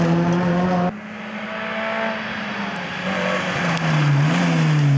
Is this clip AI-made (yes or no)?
no